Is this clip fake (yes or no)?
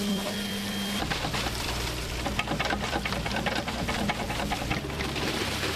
yes